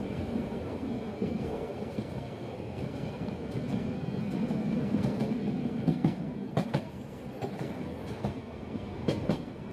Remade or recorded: remade